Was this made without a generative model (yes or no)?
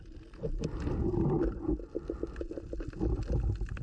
yes